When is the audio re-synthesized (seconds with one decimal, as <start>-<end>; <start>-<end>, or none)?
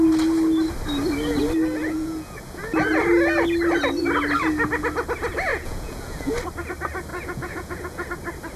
1.8-2.9; 5.5-6.3; 7.1-8.1